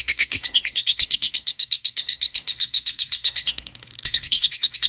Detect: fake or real fake